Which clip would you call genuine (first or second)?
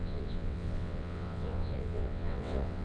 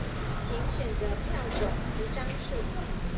second